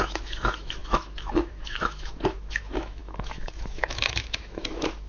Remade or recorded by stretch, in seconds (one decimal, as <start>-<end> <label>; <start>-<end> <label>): 0.0-5.1 remade